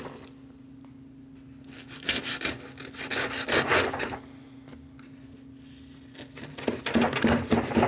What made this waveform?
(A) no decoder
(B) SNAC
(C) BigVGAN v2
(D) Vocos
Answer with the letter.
A